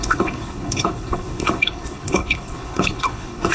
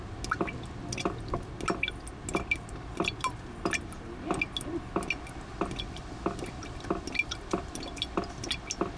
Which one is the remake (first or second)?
first